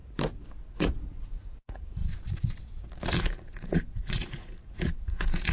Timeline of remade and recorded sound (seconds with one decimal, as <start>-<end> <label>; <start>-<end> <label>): 0.0-0.6 recorded; 0.6-2.0 remade; 2.0-3.2 recorded; 3.2-5.5 remade

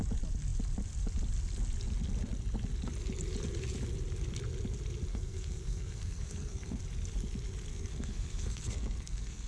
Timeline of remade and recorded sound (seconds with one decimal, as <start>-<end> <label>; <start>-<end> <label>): 0.0-5.1 recorded; 5.1-6.8 remade; 6.8-7.7 recorded; 7.7-9.5 remade

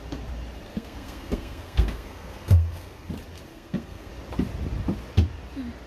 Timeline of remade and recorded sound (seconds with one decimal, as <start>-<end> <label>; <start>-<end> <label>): 0.0-0.7 recorded; 0.7-3.1 remade; 3.1-3.5 recorded; 3.5-4.1 remade; 4.1-5.9 recorded

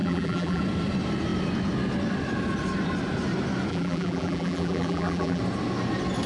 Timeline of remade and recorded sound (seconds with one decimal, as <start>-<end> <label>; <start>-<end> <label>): 0.0-0.6 remade; 0.6-3.7 recorded; 3.7-5.4 remade; 5.4-6.3 recorded

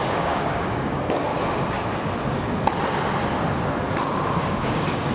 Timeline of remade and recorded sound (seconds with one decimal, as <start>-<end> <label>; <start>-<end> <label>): 0.0-1.3 remade; 1.3-4.4 recorded; 4.4-5.1 remade

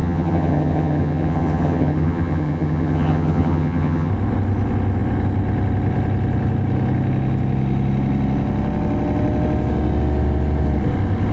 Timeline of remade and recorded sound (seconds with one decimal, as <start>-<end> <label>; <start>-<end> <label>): 0.0-4.1 remade; 4.1-11.3 recorded

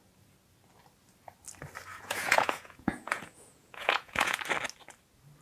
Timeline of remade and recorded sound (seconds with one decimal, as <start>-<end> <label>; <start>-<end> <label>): 0.0-1.9 recorded; 1.9-4.4 remade; 4.4-5.4 recorded